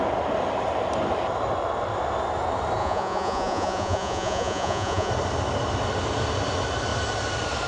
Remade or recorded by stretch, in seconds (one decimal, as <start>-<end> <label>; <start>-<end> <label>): 0.0-2.8 recorded; 2.8-5.1 remade; 5.1-7.7 recorded